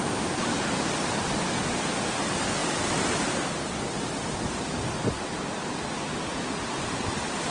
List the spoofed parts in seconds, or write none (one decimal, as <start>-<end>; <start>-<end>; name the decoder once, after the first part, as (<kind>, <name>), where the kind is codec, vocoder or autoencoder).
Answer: none